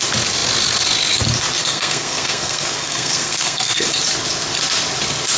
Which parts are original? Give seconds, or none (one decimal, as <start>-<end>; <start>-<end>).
0.0-1.6; 3.8-5.4